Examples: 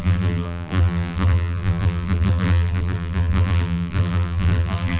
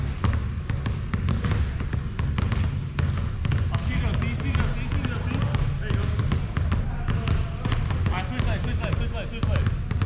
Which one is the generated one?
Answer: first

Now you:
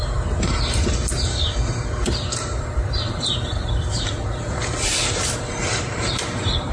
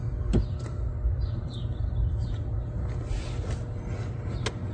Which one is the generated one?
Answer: first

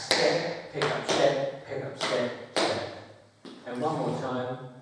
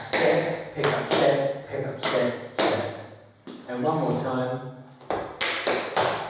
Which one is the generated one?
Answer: first